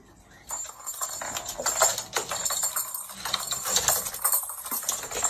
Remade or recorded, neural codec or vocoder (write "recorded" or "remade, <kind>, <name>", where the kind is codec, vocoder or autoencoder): recorded